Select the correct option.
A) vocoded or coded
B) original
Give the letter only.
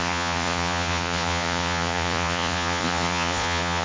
A